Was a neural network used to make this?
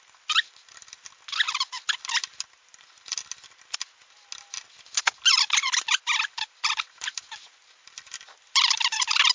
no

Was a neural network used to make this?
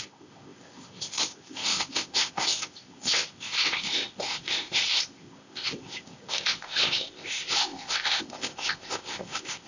yes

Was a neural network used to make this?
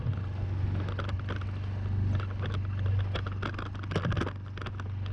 no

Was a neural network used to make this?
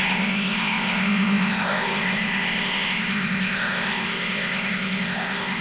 yes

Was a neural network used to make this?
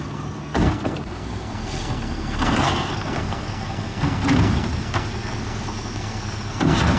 yes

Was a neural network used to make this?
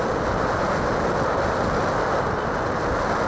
no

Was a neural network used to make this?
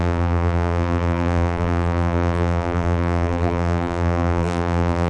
yes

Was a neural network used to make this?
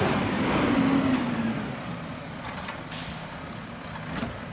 no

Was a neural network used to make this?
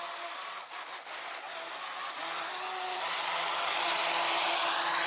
no